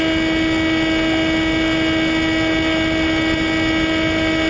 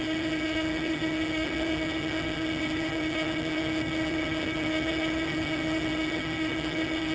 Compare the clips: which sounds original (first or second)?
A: first